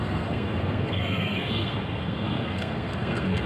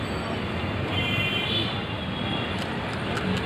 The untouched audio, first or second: second